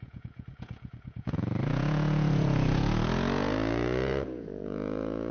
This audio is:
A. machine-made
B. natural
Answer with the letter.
A